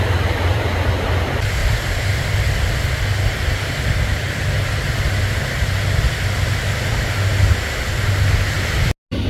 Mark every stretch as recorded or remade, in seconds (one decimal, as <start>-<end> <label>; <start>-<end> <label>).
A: 0.0-1.6 recorded; 1.6-2.2 remade; 2.2-9.3 recorded